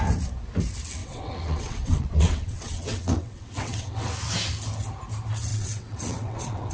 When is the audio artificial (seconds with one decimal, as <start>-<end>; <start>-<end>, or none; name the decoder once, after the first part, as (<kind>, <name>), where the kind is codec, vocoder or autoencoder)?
1.0-4.1 (vocoder, WaveNeXt); 5.5-6.7